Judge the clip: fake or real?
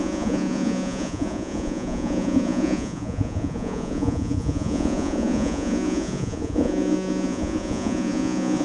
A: fake